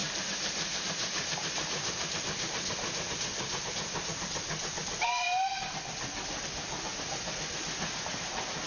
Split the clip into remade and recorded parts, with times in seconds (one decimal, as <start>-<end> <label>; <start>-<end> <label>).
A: 0.0-2.2 remade; 2.2-8.7 recorded